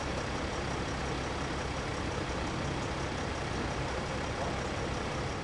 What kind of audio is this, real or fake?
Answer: real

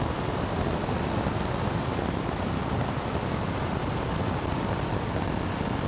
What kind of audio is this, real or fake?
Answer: real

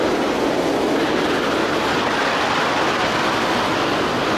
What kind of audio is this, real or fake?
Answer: real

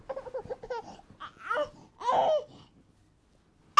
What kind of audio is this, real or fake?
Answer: real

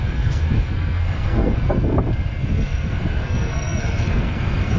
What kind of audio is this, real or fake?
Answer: fake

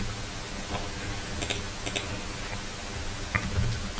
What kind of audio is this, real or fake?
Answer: real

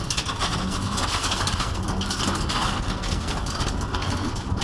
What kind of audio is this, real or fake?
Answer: fake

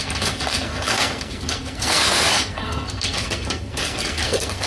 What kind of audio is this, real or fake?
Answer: fake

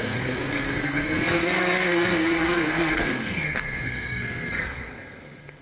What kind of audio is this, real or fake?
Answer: fake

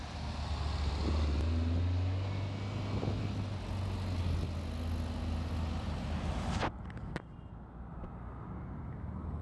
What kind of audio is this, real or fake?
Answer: real